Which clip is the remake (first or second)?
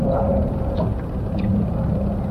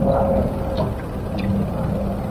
first